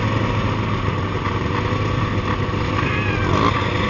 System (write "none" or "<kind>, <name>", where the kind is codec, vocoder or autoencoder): none